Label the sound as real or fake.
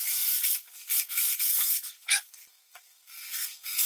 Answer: fake